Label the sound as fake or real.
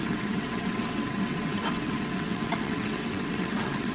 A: fake